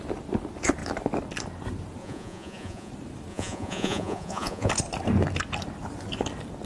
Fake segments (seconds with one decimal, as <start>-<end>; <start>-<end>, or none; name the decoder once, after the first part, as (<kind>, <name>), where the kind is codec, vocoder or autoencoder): 2.0-2.9 (vocoder, Vocos); 3.3-4.7